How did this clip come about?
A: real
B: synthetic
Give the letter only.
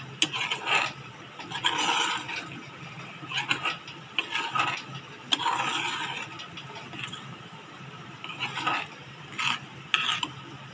A